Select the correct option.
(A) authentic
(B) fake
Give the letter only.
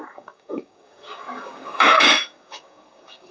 B